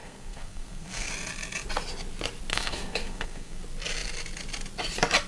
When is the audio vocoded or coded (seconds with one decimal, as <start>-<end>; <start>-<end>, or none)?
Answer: 0.0-1.1; 2.5-3.6